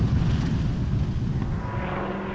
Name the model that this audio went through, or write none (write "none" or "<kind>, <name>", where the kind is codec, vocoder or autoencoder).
none